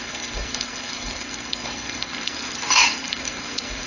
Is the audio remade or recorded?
remade